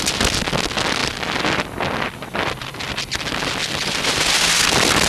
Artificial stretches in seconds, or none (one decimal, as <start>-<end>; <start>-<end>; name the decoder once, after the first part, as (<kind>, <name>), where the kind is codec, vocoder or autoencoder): none